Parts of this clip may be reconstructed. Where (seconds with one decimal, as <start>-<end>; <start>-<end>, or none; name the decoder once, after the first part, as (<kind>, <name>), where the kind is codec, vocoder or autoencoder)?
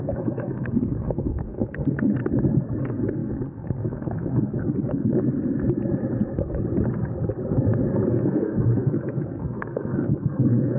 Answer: 0.0-2.2 (codec, SNAC); 2.8-5.2; 8.1-10.8